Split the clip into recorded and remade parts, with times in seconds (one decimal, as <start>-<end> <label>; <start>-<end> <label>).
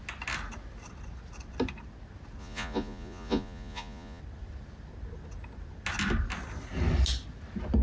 0.0-2.4 recorded; 2.4-4.2 remade; 4.2-7.8 recorded